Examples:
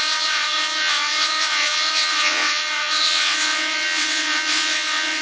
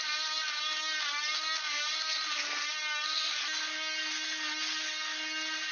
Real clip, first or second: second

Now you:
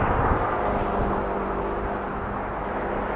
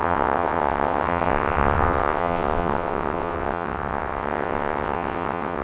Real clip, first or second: first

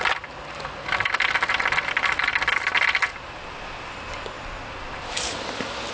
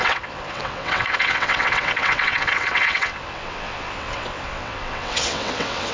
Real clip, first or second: first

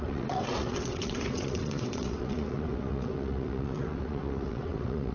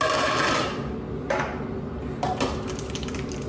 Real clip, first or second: second